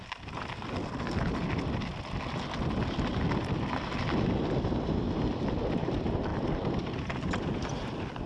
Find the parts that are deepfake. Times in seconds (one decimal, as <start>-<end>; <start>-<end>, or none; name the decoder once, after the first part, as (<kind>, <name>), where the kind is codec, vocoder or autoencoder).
6.3-8.3 (vocoder, BigVGAN v2)